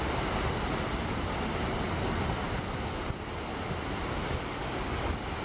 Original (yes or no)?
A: yes